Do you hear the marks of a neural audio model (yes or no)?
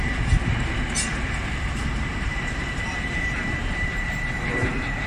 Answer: yes